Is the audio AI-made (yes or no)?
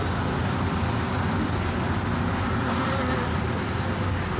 no